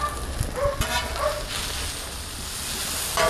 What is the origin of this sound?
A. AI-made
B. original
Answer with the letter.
B